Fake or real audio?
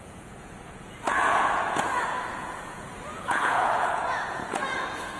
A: fake